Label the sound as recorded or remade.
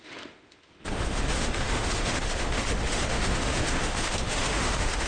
remade